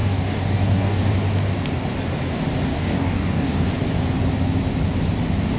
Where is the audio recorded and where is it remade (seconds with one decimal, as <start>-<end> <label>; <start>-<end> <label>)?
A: 0.0-1.1 remade; 1.1-2.7 recorded; 2.7-3.7 remade; 3.7-5.6 recorded